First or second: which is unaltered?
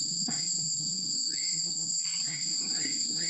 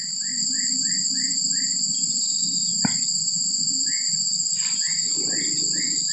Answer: second